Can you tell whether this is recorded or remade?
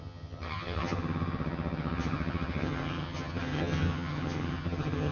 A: remade